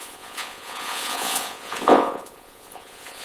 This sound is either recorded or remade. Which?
remade